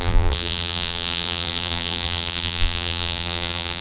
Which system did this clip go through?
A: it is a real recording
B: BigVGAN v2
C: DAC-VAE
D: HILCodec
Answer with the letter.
B